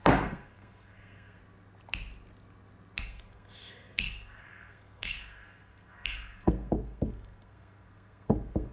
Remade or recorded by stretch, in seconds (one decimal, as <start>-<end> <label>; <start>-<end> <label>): 0.0-1.4 remade; 1.4-3.0 recorded; 3.0-8.7 remade